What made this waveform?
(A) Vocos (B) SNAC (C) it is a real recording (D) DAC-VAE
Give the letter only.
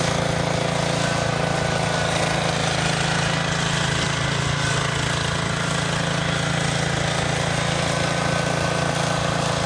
C